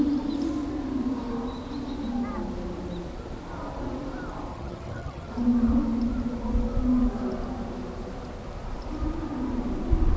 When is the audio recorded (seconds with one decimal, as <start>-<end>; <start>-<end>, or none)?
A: 0.0-4.5; 5.3-10.2